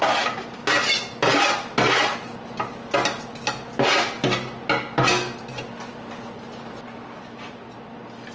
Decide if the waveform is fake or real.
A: real